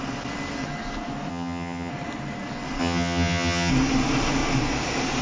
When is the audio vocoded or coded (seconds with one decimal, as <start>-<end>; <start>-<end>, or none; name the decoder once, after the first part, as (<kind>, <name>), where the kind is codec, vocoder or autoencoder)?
1.3-1.9 (vocoder, HiFi-GAN); 2.8-3.7